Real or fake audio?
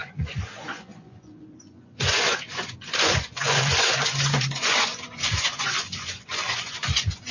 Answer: fake